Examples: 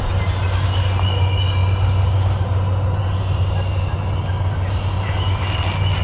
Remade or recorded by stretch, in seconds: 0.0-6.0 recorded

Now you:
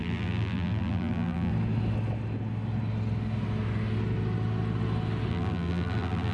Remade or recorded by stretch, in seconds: 0.0-1.5 remade; 1.5-5.3 recorded; 5.3-6.3 remade

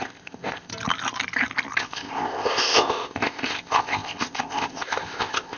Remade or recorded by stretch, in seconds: 0.0-0.7 remade; 0.7-1.8 recorded; 1.8-5.6 remade

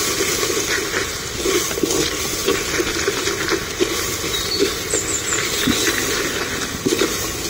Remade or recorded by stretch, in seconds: 0.0-7.5 recorded

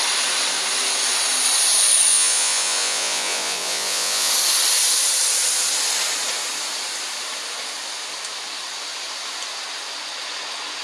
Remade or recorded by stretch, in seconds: 0.0-2.1 recorded; 2.1-4.3 remade; 4.3-10.8 recorded

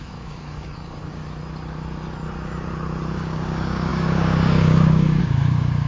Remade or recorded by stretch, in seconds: 0.0-1.2 remade; 1.2-3.1 recorded; 3.1-5.9 remade